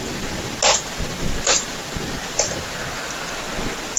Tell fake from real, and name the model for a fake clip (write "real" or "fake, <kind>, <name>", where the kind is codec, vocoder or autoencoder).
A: real